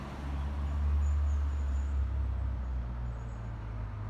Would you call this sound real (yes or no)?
yes